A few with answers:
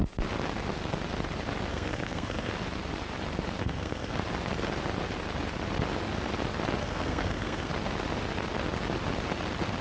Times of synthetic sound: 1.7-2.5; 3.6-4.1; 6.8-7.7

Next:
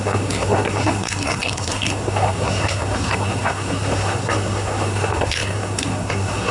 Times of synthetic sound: 0.0-6.5

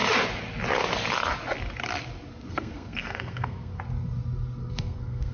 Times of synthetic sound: 2.5-3.7; 4.7-5.3

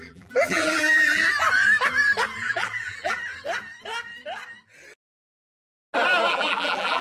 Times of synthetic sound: 0.0-1.2; 2.4-3.2; 6.3-7.0

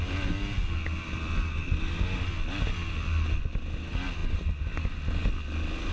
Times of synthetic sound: none

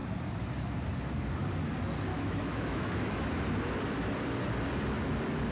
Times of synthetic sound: 2.1-3.4

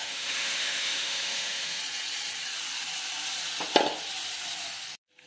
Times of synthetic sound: 0.0-1.8